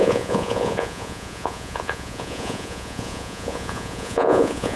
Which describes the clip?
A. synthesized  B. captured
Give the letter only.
A